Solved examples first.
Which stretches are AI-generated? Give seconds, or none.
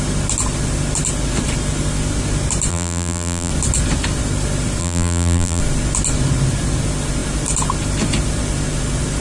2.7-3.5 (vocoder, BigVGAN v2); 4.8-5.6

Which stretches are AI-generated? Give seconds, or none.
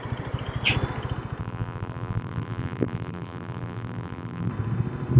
1.4-4.5 (vocoder, BigVGAN v2)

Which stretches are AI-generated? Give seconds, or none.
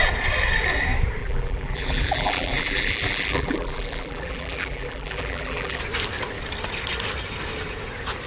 1.2-5.8 (vocoder, BigVGAN v2)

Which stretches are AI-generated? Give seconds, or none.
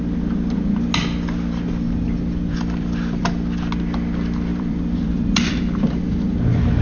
2.5-3.2 (vocoder, BigVGAN v2); 4.5-5.5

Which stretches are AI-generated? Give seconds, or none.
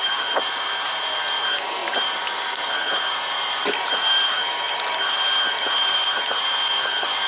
1.8-6.2 (vocoder, BigVGAN v2)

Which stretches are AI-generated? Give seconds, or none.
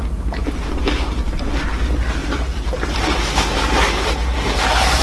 0.4-1.4 (vocoder, BigVGAN v2)